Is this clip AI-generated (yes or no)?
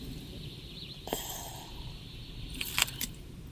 yes